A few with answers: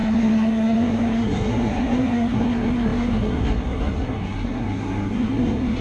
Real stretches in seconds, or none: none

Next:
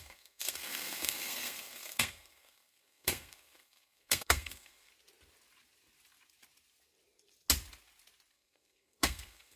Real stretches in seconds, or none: 4.9-8.3

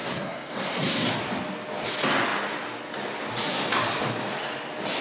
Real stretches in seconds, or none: 1.1-5.0